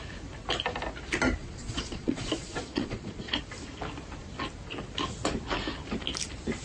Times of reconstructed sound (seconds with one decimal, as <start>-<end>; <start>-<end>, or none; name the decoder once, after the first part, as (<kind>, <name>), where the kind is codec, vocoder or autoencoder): 1.4-3.4 (vocoder, Vocos)